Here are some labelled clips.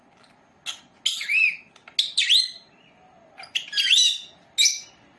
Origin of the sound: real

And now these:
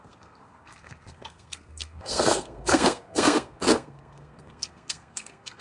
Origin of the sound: fake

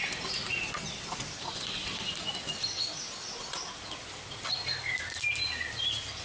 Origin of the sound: real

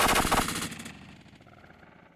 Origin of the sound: real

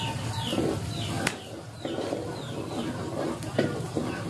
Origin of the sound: real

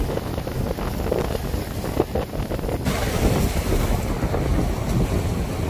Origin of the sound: real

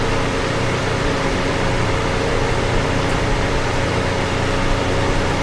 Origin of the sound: fake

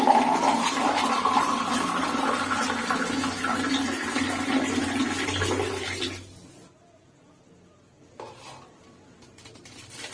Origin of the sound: real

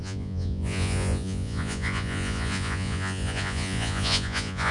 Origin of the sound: fake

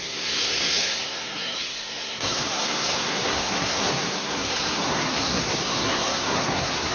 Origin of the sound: fake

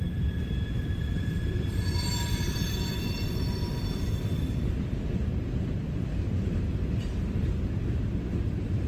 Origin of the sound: fake